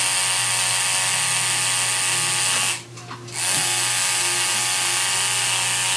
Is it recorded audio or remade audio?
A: recorded